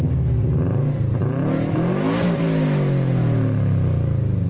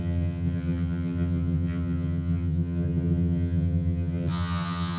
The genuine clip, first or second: first